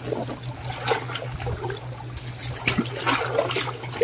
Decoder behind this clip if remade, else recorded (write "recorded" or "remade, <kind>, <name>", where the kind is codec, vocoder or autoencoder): recorded